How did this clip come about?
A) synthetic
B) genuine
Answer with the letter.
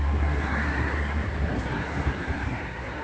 A